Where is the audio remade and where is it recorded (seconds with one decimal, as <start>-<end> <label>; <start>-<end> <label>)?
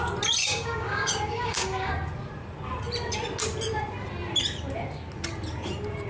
0.0-0.4 recorded; 0.4-1.9 remade; 1.9-6.1 recorded